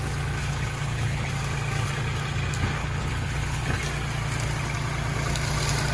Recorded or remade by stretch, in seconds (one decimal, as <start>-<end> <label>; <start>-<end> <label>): 0.0-0.4 recorded; 0.4-1.3 remade; 1.3-2.8 recorded; 2.8-3.8 remade; 3.8-5.9 recorded